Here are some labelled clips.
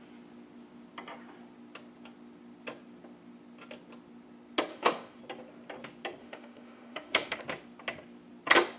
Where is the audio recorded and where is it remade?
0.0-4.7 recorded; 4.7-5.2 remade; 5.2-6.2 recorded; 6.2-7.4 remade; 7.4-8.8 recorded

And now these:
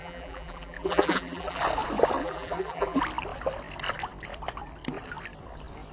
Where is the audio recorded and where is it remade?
0.0-1.6 remade; 1.6-2.2 recorded; 2.2-3.0 remade; 3.0-5.9 recorded

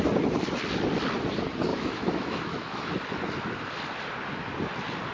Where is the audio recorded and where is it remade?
0.0-1.7 recorded; 1.7-2.9 remade; 2.9-5.1 recorded

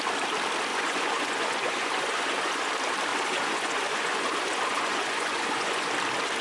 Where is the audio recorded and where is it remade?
0.0-0.7 recorded; 0.7-2.7 remade; 2.7-3.1 recorded; 3.1-5.9 remade; 5.9-6.4 recorded

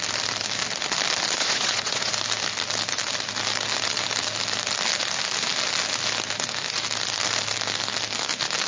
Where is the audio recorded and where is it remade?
0.0-1.4 recorded; 1.4-2.1 remade; 2.1-8.7 recorded

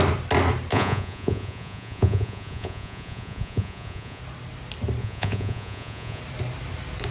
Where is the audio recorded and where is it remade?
0.0-0.7 recorded; 0.7-4.2 remade; 4.2-5.0 recorded; 5.0-6.2 remade; 6.2-7.1 recorded